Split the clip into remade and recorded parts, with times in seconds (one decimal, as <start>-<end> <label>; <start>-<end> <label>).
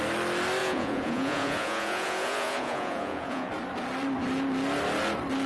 0.0-0.6 recorded; 0.6-3.5 remade; 3.5-5.5 recorded